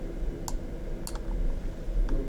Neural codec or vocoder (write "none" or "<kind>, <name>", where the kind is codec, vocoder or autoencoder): none